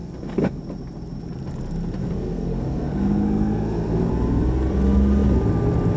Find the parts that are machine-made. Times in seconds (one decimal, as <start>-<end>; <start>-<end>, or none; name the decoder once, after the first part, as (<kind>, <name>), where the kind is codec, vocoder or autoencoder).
0.0-0.6 (codec, SNAC); 2.0-4.1

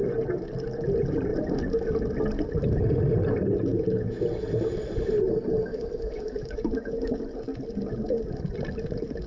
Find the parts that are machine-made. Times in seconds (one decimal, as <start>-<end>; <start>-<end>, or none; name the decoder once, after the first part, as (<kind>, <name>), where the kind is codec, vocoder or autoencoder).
3.7-4.2 (autoencoder, DAC-VAE); 5.7-7.2

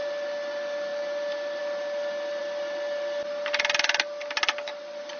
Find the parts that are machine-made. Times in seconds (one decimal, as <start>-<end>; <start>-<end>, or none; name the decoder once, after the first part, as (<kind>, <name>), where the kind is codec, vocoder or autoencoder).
none

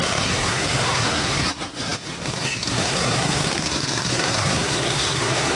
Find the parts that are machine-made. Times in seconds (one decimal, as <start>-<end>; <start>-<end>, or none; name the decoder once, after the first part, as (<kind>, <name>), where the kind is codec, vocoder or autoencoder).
0.0-5.5 (codec, SNAC)

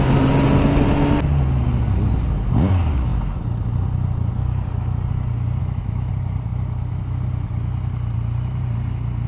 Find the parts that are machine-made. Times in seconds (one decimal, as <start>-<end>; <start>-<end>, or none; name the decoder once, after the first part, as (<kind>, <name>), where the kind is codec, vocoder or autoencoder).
5.6-6.1 (autoencoder, DAC-VAE)

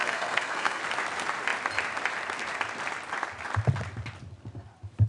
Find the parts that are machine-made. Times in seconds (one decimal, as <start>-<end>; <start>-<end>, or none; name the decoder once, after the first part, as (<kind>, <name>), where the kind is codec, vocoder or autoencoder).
0.0-0.8 (codec, SNAC)

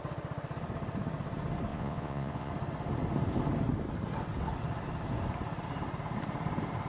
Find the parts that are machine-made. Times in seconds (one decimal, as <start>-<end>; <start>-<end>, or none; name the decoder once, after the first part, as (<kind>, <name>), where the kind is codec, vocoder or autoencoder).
1.7-2.5 (vocoder, Vocos)